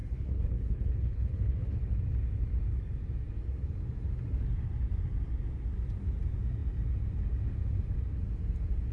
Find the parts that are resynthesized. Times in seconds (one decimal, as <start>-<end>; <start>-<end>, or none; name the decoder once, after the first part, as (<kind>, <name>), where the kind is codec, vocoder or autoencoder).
0.0-1.9 (codec, HILCodec)